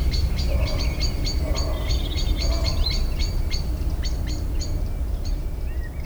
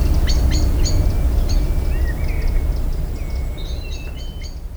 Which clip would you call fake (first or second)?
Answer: first